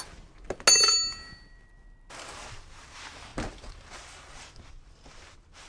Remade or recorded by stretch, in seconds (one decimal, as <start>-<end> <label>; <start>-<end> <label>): 0.0-5.7 recorded

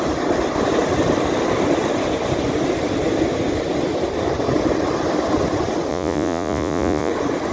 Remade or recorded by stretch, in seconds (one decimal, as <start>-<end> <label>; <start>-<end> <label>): 0.0-5.9 recorded; 5.9-7.1 remade; 7.1-7.5 recorded

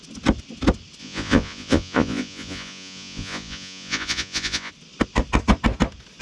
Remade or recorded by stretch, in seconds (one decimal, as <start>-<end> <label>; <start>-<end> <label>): 0.0-1.0 recorded; 1.0-4.7 remade; 4.7-6.2 recorded

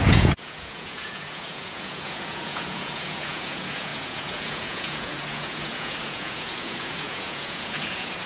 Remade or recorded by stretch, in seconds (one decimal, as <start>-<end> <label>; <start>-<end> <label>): 0.0-8.3 remade

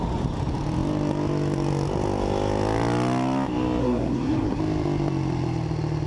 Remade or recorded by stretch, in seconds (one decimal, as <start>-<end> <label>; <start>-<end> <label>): 0.0-3.8 recorded; 3.8-4.6 remade; 4.6-6.1 recorded